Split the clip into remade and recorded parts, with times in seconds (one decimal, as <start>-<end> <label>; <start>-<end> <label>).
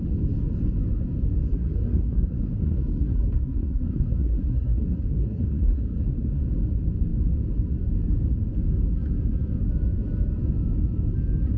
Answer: 0.0-1.5 recorded; 1.5-6.4 remade; 6.4-11.6 recorded